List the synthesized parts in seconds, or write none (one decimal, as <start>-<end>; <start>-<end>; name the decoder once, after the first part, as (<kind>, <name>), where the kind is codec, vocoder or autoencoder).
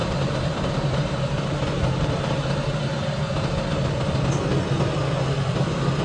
0.0-3.5 (vocoder, BigVGAN v2)